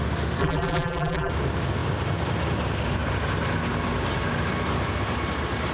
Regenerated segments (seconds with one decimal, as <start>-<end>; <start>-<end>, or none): 0.4-1.3